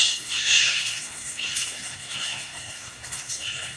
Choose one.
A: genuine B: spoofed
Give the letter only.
B